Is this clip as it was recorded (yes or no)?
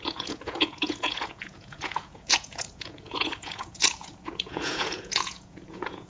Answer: no